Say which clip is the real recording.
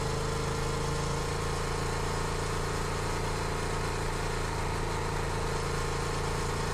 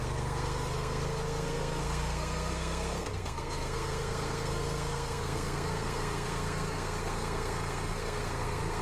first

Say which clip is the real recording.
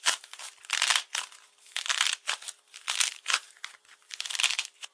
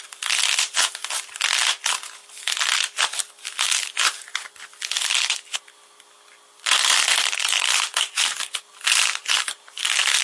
second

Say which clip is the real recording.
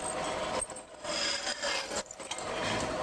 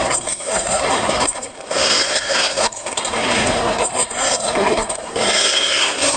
first